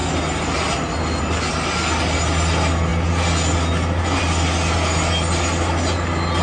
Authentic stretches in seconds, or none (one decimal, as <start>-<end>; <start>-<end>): 0.0-6.4